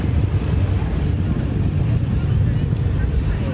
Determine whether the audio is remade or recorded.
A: recorded